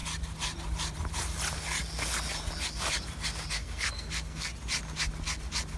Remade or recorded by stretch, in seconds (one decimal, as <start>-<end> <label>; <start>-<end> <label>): 0.0-3.5 recorded; 3.5-4.5 remade; 4.5-5.8 recorded